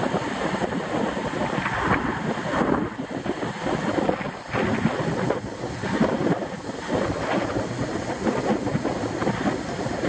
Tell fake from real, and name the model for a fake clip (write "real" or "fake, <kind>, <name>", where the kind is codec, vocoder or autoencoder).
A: real